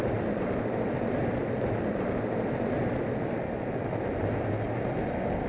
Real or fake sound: real